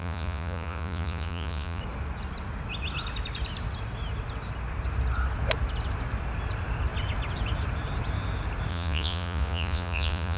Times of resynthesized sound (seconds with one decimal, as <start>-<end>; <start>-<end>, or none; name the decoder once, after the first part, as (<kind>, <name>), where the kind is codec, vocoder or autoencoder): 0.0-1.8 (vocoder, Vocos); 8.7-10.4